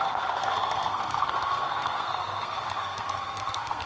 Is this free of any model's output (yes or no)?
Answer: no